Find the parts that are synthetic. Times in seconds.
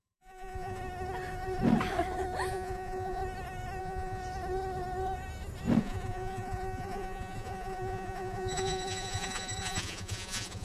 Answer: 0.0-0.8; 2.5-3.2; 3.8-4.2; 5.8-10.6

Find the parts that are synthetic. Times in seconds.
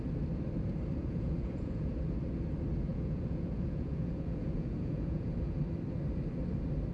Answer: 1.0-1.9; 2.9-5.6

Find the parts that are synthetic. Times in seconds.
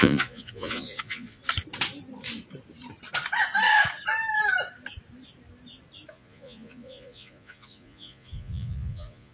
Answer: 0.0-1.4; 6.1-9.3